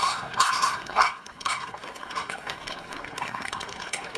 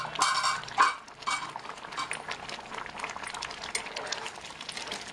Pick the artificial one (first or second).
first